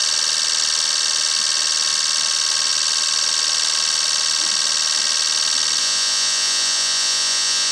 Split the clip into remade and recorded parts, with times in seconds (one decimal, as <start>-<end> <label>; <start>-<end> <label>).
0.0-5.8 recorded; 5.8-7.7 remade